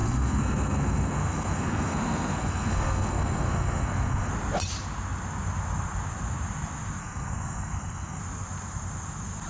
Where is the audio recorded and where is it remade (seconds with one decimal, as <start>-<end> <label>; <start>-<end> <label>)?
0.0-4.3 remade; 4.3-7.0 recorded; 7.0-8.2 remade; 8.2-9.5 recorded